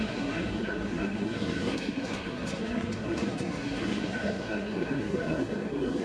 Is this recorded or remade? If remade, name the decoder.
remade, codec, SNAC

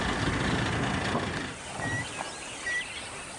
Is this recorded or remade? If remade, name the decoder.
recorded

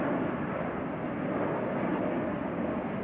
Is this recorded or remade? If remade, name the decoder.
recorded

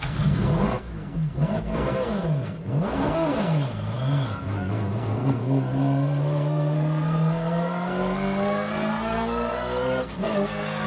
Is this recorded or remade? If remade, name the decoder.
remade, codec, SNAC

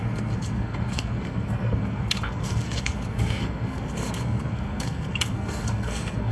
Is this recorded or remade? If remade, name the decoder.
remade, codec, SNAC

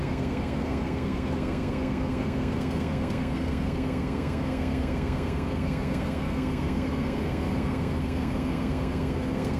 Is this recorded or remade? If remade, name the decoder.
remade, codec, SNAC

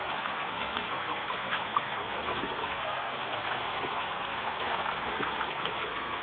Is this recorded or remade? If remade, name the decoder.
remade, codec, SNAC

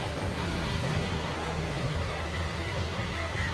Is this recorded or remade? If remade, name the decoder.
remade, codec, SNAC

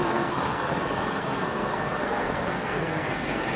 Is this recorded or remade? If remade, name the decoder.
remade, codec, SNAC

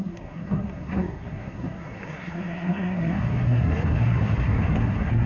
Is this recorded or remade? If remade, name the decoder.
remade, codec, SNAC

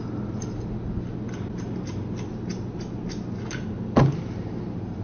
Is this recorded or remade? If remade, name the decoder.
recorded